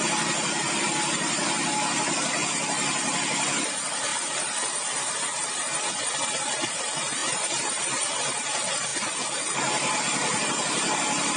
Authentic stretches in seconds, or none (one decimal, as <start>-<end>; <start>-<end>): 0.0-11.4